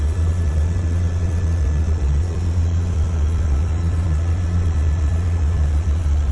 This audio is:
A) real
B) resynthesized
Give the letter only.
B